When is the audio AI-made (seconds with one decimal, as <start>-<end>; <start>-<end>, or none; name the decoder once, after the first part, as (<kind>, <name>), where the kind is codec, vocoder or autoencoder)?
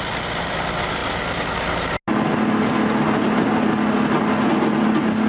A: none